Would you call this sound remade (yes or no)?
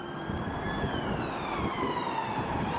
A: no